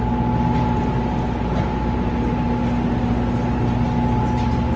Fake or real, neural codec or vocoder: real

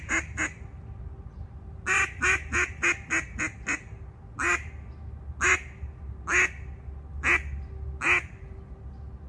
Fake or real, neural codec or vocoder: real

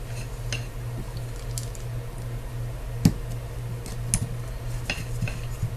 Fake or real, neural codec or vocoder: real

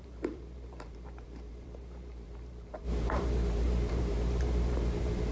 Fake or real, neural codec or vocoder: fake, vocoder, BigVGAN v2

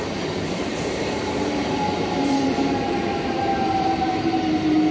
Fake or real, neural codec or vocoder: fake, vocoder, BigVGAN v2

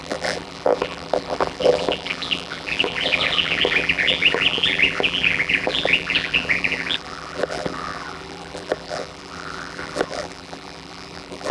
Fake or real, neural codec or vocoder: fake, vocoder, BigVGAN v2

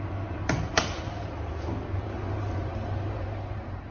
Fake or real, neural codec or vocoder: fake, vocoder, BigVGAN v2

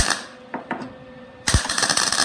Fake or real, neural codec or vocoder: fake, vocoder, BigVGAN v2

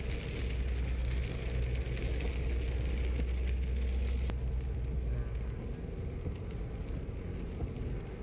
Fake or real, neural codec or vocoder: real